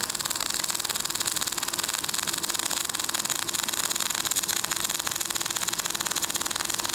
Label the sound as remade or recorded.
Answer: recorded